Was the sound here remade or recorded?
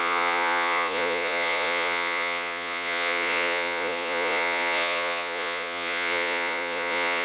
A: remade